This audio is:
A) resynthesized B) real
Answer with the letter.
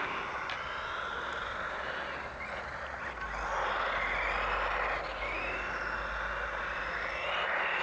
B